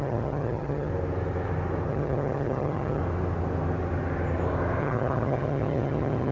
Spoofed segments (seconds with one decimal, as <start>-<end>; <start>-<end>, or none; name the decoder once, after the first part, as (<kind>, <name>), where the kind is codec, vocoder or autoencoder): 0.0-0.9 (vocoder, HiFi-GAN); 1.9-3.0; 4.8-6.3